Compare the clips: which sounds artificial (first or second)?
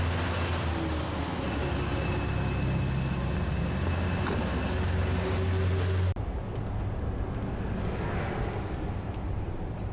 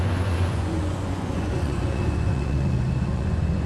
second